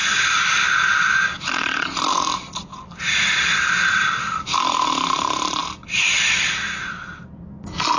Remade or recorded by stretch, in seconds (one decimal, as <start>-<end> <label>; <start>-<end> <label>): 0.0-8.0 recorded